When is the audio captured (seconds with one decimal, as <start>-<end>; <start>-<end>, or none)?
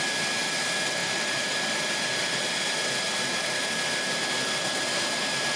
0.0-1.0; 1.6-5.6